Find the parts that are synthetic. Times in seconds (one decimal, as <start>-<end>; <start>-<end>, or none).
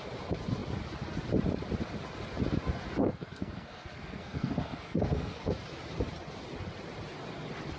3.0-5.5